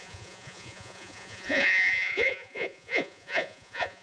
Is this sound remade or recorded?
remade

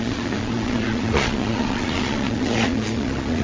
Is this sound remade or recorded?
remade